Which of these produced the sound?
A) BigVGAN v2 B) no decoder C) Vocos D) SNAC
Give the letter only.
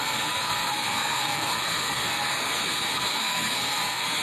D